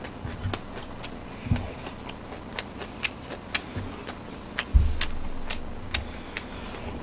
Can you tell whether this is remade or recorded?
recorded